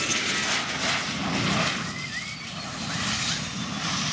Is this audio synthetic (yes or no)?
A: no